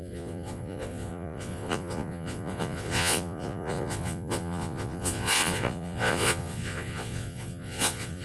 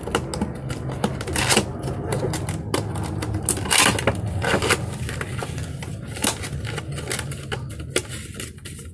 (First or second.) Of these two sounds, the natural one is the second